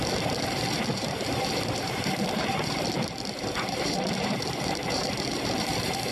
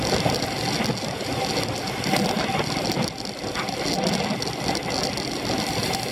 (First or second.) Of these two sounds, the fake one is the first